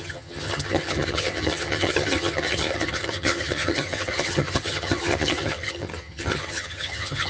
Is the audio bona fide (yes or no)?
no